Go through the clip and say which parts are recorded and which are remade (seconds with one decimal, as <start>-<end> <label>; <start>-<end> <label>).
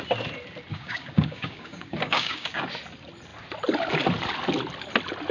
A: 0.0-0.7 recorded; 0.7-2.6 remade; 2.6-5.3 recorded